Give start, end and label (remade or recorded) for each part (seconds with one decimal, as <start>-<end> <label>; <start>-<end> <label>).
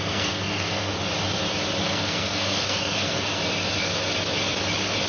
0.0-0.9 remade; 0.9-1.8 recorded; 1.8-3.4 remade; 3.4-5.1 recorded